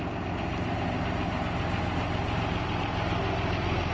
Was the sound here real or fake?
real